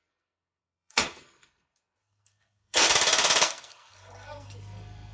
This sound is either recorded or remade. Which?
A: remade